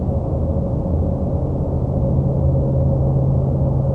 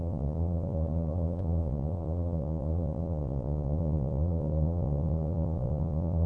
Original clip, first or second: first